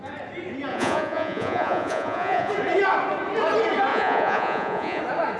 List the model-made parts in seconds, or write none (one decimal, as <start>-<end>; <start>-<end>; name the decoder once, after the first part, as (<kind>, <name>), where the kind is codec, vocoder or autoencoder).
0.7-2.5 (vocoder, Vocos); 3.9-5.0